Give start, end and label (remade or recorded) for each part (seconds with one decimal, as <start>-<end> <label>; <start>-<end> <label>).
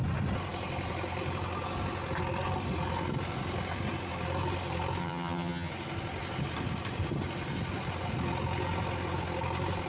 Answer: 0.0-5.0 recorded; 5.0-5.7 remade; 5.7-9.9 recorded